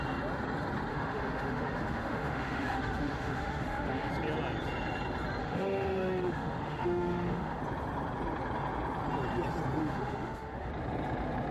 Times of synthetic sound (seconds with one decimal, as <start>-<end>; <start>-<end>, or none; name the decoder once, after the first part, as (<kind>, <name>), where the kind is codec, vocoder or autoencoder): 0.9-4.1 (autoencoder, DAC-VAE); 5.4-7.6; 9.8-10.7